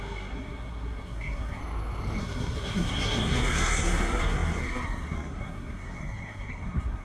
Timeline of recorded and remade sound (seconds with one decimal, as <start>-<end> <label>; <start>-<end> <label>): 0.0-1.6 remade; 1.6-2.2 recorded; 2.2-7.0 remade